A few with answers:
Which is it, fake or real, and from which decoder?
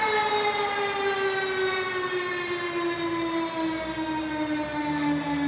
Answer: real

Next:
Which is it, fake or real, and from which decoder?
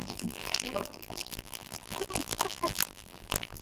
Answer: fake, vocoder, BigVGAN v2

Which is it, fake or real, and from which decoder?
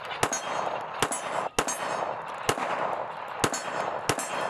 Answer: real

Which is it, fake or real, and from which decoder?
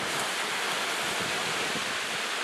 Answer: real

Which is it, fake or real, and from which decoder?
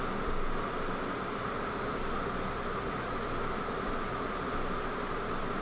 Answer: real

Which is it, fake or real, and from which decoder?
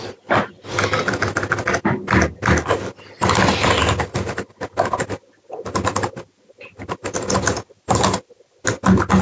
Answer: real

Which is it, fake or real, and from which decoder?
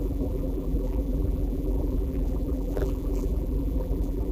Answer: fake, vocoder, BigVGAN v2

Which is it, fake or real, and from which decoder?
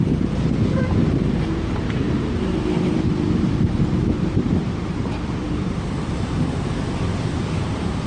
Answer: fake, vocoder, BigVGAN v2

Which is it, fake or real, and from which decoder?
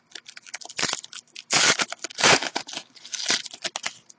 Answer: real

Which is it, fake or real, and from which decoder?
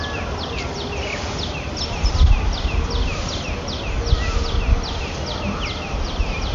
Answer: real